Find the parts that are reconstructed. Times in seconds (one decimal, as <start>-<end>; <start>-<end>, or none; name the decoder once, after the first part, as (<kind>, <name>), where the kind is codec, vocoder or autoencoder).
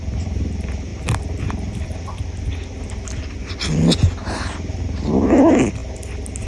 none